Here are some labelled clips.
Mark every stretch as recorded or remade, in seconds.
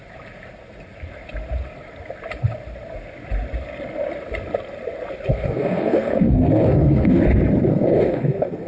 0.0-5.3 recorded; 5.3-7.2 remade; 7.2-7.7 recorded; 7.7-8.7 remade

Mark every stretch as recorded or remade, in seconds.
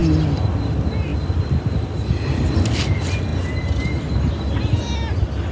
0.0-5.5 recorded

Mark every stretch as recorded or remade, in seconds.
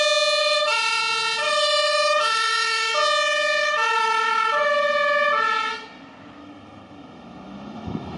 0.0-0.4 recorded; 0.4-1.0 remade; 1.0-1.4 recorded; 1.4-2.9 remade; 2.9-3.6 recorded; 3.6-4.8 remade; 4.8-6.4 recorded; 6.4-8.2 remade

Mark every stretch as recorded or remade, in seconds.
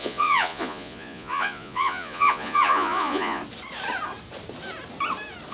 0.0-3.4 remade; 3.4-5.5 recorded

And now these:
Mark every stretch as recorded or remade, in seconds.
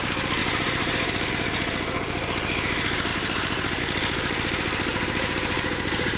0.0-0.4 recorded; 0.4-1.3 remade; 1.3-3.1 recorded; 3.1-3.8 remade; 3.8-4.9 recorded; 4.9-6.2 remade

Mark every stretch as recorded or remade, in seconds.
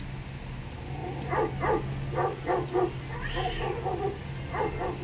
0.0-5.0 recorded